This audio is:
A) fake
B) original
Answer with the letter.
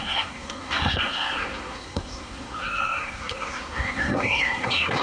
A